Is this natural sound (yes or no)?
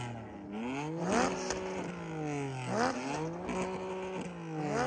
yes